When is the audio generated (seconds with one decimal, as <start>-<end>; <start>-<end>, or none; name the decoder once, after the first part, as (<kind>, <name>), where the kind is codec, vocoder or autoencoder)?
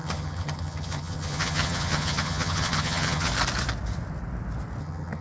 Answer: 0.0-3.3 (vocoder, HiFi-GAN); 4.8-5.2